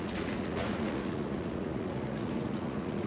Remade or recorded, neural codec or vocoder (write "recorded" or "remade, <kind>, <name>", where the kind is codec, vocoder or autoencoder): remade, vocoder, Vocos